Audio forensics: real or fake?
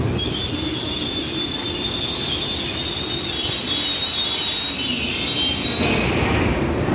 real